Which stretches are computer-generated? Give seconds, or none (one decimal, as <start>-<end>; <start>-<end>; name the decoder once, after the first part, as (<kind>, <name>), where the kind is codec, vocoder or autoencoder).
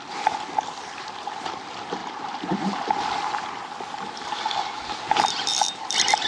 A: none